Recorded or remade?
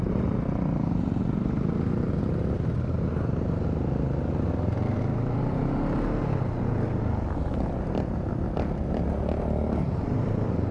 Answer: recorded